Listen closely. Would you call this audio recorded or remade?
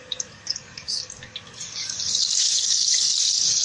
remade